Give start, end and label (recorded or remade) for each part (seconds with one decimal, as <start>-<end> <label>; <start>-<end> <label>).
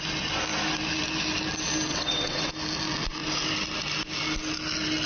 0.0-1.9 recorded; 1.9-2.5 remade; 2.5-5.1 recorded